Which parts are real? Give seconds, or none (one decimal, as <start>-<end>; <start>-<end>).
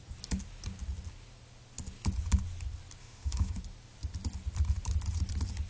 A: 0.0-3.0; 3.6-5.7